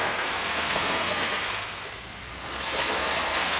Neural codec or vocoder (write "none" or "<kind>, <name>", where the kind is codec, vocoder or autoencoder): codec, SNAC